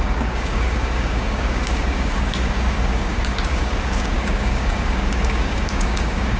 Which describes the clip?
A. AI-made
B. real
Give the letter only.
A